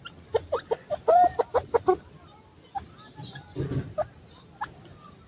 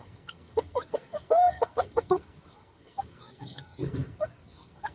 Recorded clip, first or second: first